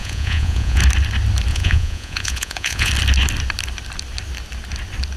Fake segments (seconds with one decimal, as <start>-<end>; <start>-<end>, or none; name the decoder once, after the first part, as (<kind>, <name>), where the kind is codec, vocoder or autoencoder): 0.0-0.8 (vocoder, Vocos); 1.5-2.9